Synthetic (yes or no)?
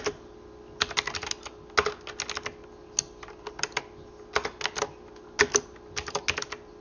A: no